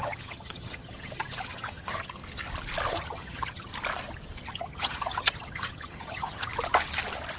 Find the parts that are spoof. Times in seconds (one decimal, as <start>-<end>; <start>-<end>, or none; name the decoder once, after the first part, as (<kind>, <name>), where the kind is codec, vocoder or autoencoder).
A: 0.0-2.2 (vocoder, HiFi-GAN); 2.9-3.7; 4.5-6.5